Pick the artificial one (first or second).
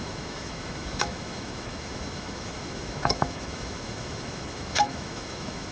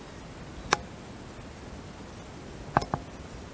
first